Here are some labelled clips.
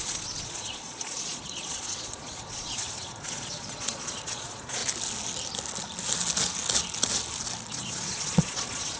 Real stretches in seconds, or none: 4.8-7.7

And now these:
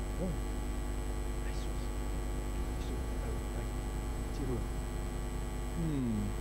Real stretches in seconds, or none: 0.0-2.6; 3.4-4.1; 4.8-6.4

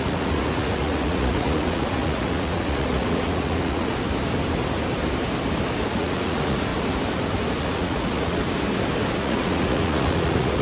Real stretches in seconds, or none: 3.9-5.9; 6.7-7.6; 8.4-9.2